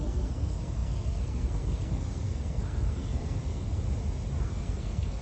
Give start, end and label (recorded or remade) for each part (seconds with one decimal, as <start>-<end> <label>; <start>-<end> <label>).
0.0-3.8 remade; 3.8-4.4 recorded; 4.4-5.2 remade

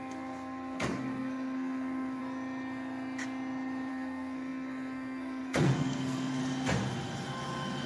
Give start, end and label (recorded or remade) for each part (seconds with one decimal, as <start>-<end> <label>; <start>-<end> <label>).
0.0-2.2 remade; 2.2-3.9 recorded; 3.9-6.4 remade; 6.4-7.9 recorded

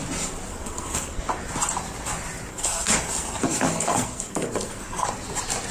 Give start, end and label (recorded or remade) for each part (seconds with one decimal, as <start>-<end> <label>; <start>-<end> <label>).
0.0-0.5 recorded; 0.5-1.2 remade; 1.2-2.5 recorded; 2.5-5.1 remade; 5.1-5.7 recorded

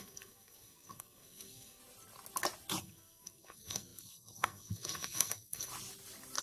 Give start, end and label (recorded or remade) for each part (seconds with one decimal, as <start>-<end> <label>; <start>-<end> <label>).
0.0-1.8 remade; 1.8-2.8 recorded; 2.8-5.7 remade; 5.7-6.4 recorded

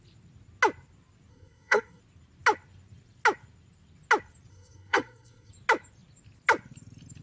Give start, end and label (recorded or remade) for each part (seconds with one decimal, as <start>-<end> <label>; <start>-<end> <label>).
0.0-1.3 recorded; 1.3-2.0 remade; 2.0-4.5 recorded; 4.5-5.5 remade; 5.5-7.2 recorded

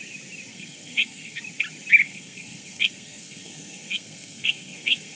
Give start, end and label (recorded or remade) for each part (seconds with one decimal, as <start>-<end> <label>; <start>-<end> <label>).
0.0-0.5 recorded; 0.5-1.4 remade; 1.4-2.0 recorded; 2.0-5.2 remade

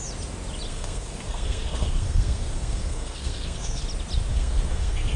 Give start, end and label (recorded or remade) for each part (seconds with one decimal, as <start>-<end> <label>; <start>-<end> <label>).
0.0-0.7 recorded; 0.7-3.8 remade; 3.8-4.3 recorded; 4.3-5.2 remade

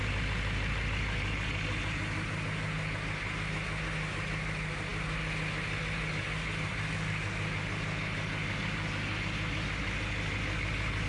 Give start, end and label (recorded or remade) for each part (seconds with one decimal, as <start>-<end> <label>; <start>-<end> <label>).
0.0-11.1 recorded